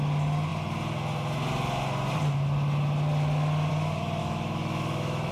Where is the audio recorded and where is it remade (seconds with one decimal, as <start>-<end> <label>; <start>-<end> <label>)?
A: 0.0-4.2 recorded; 4.2-5.3 remade